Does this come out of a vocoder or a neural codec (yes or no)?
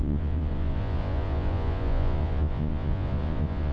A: yes